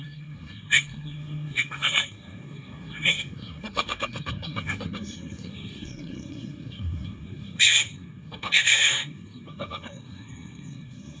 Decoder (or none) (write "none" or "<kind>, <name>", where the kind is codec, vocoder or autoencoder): codec, SNAC